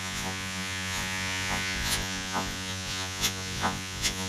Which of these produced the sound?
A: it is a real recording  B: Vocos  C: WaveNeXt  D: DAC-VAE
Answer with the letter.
B